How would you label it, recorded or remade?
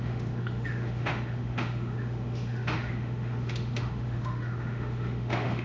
remade